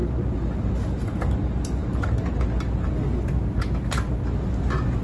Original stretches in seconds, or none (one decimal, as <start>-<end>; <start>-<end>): 0.7-5.0